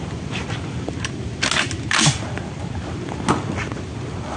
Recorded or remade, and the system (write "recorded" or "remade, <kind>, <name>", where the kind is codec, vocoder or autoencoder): recorded